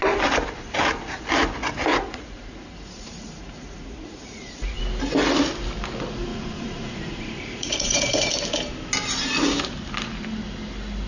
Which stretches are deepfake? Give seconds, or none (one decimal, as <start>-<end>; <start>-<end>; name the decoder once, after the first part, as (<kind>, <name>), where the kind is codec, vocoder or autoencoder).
1.9-4.8 (vocoder, Vocos); 6.3-8.3